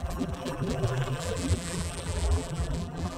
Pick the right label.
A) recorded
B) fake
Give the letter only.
B